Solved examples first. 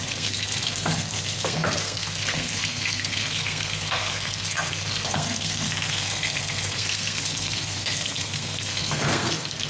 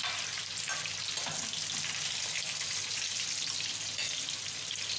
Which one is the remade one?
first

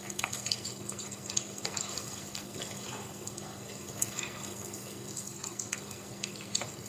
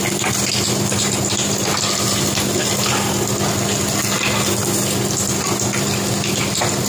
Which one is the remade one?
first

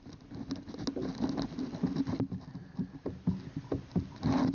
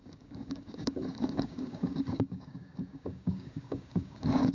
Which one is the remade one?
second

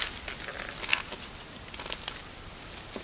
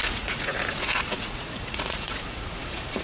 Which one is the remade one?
second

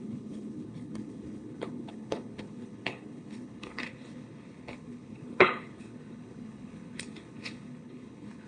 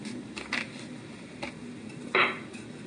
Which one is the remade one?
first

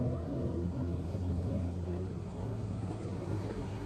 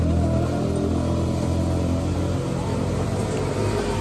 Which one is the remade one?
first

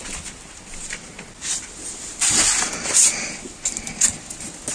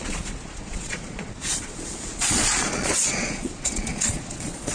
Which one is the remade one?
second